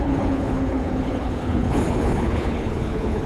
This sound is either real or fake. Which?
fake